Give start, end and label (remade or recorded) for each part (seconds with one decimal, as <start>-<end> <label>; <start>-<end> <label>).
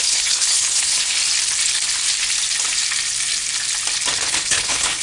0.0-1.2 remade; 1.2-4.2 recorded; 4.2-5.0 remade